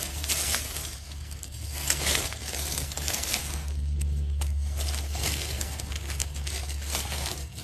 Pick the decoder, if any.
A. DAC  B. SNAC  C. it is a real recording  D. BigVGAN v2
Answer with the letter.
B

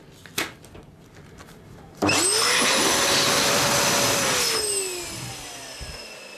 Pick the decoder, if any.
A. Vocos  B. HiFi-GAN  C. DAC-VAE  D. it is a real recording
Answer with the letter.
D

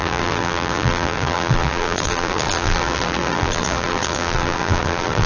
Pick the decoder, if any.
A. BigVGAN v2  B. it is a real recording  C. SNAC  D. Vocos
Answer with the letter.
A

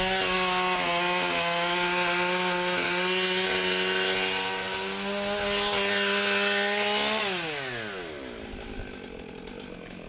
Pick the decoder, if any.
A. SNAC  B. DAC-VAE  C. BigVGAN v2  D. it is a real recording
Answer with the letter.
D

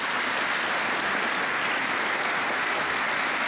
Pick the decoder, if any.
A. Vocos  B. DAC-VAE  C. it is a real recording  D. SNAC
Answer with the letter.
C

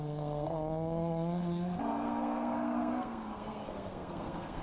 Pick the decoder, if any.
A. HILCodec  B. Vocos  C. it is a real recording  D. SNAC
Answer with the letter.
D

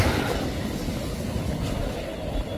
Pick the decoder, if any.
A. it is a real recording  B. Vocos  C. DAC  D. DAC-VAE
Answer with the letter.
A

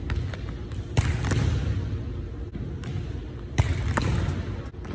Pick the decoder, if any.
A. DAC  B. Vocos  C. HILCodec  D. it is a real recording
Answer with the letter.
D